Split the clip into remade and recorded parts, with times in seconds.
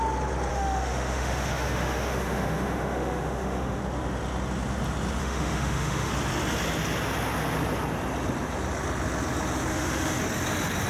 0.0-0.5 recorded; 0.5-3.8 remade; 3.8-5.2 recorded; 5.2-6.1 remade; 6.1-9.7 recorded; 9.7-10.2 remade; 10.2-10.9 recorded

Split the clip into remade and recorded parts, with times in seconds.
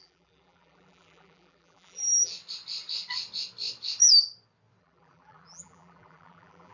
0.0-2.3 remade; 2.3-4.8 recorded; 4.8-6.7 remade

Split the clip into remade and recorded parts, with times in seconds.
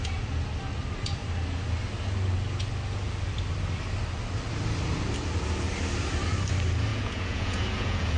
0.0-6.9 recorded; 6.9-8.2 remade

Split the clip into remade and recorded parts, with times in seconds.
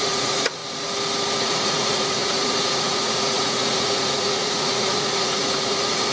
0.0-0.6 remade; 0.6-1.4 recorded; 1.4-6.1 remade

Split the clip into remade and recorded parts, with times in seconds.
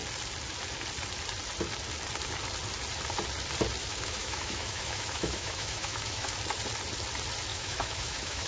0.0-3.8 recorded; 3.8-6.3 remade; 6.3-7.5 recorded; 7.5-8.5 remade